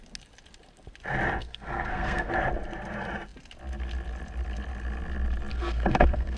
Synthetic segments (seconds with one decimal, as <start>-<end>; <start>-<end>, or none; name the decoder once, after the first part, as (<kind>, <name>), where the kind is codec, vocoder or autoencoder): 1.4-2.3 (codec, SNAC); 5.5-6.4